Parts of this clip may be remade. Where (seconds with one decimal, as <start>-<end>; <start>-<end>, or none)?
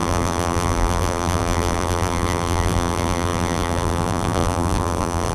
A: 0.0-5.3